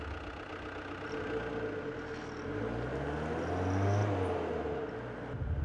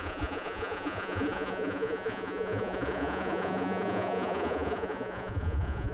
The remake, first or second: second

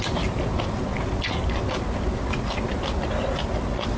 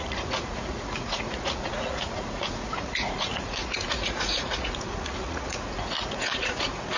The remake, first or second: second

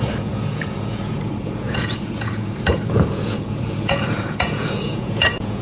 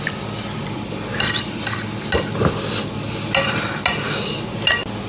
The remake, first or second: first